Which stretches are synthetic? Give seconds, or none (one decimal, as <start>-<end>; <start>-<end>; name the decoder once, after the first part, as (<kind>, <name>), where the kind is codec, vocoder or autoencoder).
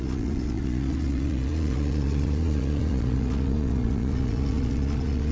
0.0-5.3 (vocoder, Vocos)